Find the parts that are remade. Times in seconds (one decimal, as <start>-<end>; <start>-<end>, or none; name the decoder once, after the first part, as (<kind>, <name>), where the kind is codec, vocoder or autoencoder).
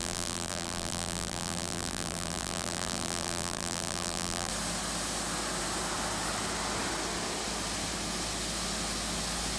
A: 0.0-4.5 (vocoder, BigVGAN v2)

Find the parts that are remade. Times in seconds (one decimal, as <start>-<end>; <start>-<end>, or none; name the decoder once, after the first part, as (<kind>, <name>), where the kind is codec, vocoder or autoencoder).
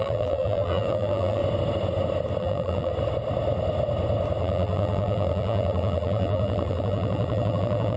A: 0.0-1.4 (vocoder, BigVGAN v2); 2.4-2.9; 4.4-8.0